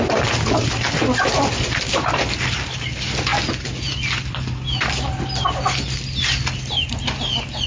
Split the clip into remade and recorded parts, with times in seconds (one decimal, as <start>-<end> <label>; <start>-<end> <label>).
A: 0.0-7.7 recorded